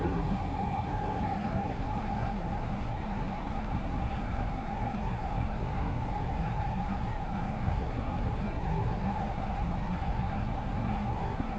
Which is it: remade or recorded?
remade